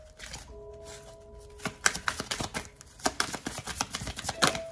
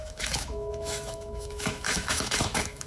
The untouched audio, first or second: first